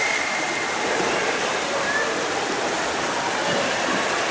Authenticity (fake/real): real